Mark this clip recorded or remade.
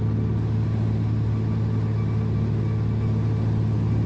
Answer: recorded